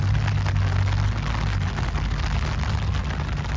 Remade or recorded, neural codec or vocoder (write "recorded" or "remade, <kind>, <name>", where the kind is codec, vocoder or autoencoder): recorded